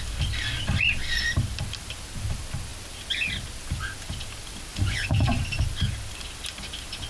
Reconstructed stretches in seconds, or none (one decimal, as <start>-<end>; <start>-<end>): 4.7-5.4